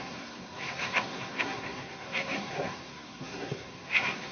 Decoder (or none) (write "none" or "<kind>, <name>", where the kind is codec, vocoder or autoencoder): codec, SNAC